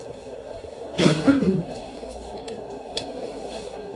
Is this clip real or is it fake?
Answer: fake